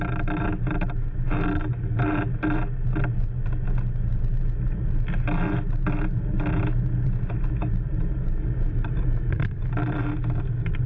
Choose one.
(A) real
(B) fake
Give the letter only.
A